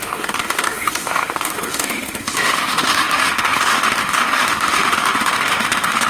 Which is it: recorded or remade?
remade